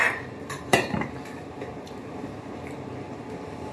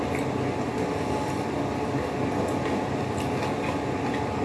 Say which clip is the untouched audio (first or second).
second